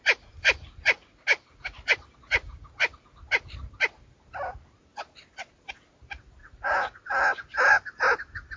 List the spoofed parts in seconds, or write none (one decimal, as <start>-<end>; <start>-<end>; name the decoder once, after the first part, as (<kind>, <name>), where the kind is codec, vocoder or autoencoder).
6.4-7.0 (vocoder, Vocos)